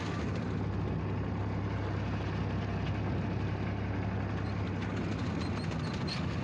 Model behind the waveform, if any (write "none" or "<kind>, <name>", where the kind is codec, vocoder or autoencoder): none